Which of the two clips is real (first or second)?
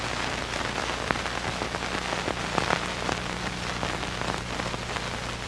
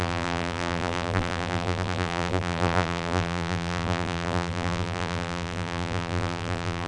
first